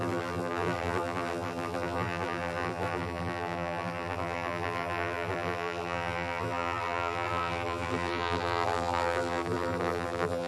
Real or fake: fake